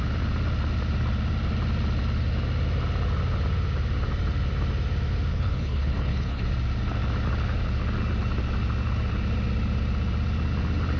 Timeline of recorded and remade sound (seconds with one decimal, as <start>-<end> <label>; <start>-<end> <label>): 0.0-5.3 recorded; 5.3-6.5 remade; 6.5-11.0 recorded